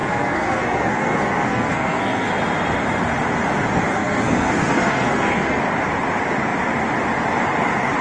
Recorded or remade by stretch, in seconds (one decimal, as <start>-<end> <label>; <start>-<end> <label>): 0.0-2.3 remade; 2.3-3.9 recorded; 3.9-5.6 remade; 5.6-8.0 recorded